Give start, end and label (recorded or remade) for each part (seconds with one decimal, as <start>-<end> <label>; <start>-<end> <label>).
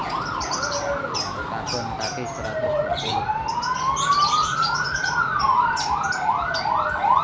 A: 0.0-2.6 recorded; 2.6-3.3 remade; 3.3-4.4 recorded; 4.4-5.4 remade; 5.4-7.2 recorded